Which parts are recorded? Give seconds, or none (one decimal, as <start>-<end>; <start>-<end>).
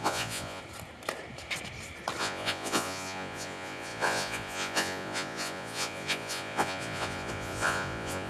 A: 0.6-2.2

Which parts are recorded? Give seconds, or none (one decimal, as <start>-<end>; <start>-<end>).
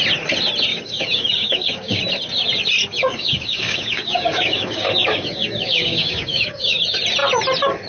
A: 0.0-0.7; 2.0-3.0; 6.8-7.9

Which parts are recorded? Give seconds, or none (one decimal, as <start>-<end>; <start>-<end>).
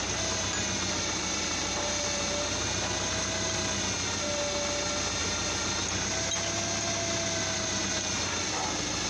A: 0.0-9.1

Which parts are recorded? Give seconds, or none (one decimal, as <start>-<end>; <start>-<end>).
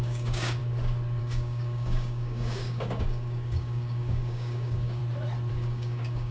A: 0.6-1.2; 5.0-5.5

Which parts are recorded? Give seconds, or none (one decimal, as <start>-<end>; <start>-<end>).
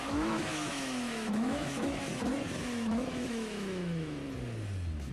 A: 2.1-2.6; 4.2-5.1